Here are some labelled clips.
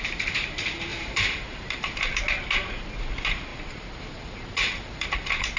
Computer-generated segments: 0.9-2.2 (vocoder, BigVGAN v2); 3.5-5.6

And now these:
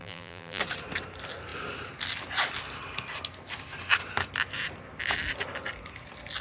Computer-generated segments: 0.0-0.6 (vocoder, BigVGAN v2)

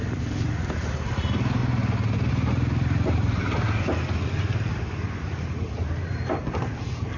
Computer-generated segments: 0.0-1.6 (vocoder, BigVGAN v2); 2.3-7.2

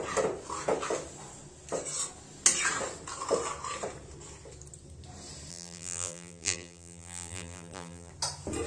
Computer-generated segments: 5.5-8.1 (vocoder, BigVGAN v2)

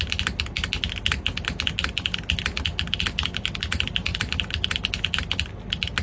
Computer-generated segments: 4.1-4.8 (vocoder, BigVGAN v2)

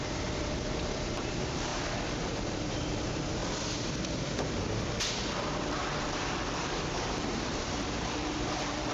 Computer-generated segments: 0.0-1.7 (vocoder, BigVGAN v2); 2.5-3.4; 5.7-8.9

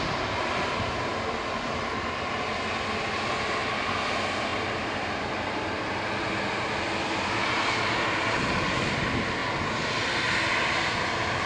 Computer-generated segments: none